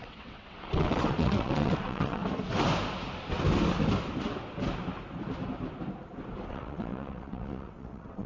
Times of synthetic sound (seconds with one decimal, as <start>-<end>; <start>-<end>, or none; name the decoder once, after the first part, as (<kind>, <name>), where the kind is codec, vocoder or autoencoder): 0.0-2.2 (vocoder, WaveNeXt); 6.5-8.3